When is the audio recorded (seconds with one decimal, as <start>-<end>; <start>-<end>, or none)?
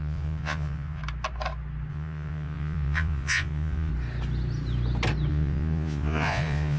1.0-1.9; 3.9-5.3